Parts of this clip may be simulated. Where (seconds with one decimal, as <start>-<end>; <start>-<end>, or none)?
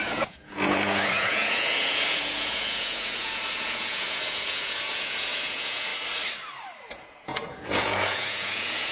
0.0-5.9; 6.8-8.9